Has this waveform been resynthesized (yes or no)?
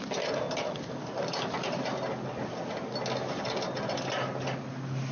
no